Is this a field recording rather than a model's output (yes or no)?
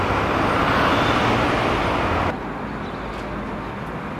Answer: yes